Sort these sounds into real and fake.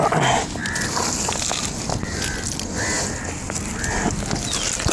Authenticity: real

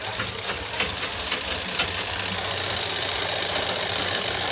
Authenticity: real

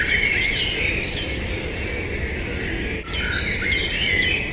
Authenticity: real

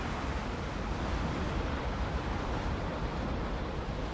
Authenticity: fake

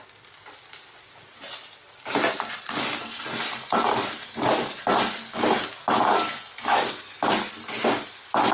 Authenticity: real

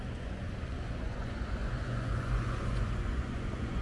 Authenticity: fake